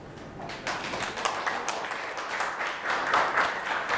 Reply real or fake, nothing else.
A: real